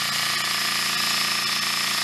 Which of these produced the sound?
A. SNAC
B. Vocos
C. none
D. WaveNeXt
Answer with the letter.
C